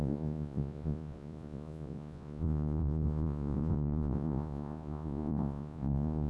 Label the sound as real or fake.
fake